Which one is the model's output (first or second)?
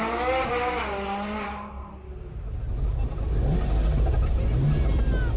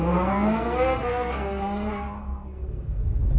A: second